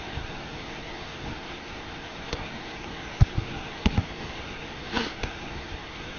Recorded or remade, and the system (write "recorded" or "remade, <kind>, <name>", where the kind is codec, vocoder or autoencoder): remade, codec, SNAC